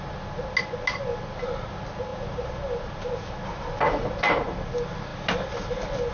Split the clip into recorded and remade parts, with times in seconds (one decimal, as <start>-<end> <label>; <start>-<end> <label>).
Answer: 0.0-6.1 recorded